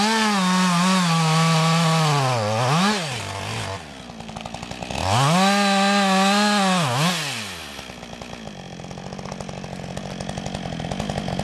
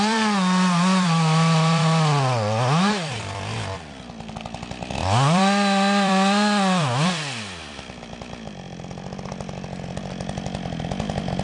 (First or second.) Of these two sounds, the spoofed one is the second